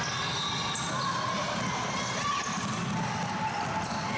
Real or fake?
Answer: real